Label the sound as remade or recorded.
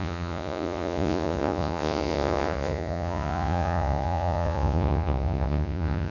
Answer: remade